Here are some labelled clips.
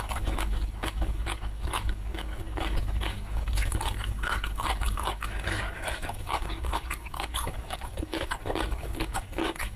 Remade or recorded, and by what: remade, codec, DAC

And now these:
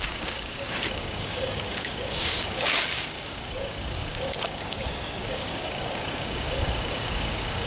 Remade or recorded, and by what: remade, codec, DAC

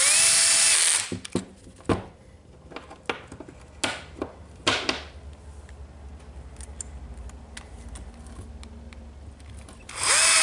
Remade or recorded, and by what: recorded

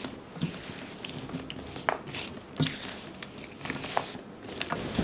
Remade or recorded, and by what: recorded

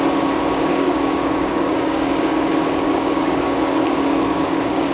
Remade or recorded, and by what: remade, codec, DAC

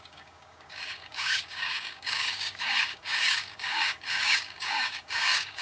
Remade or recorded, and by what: remade, codec, DAC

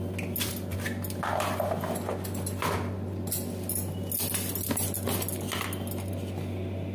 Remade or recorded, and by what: recorded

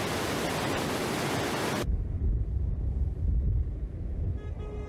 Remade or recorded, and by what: recorded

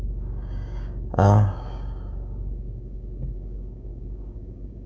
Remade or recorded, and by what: remade, codec, DAC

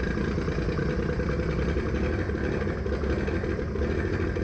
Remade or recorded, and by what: recorded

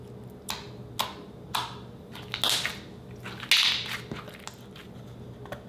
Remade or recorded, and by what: recorded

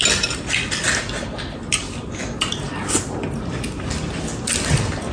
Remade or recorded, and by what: recorded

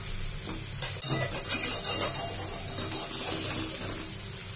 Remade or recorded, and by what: recorded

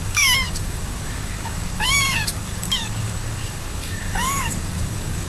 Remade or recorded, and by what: remade, codec, DAC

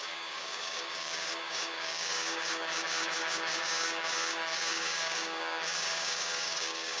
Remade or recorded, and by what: remade, codec, DAC